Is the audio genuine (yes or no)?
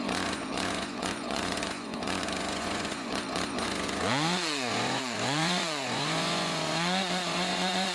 no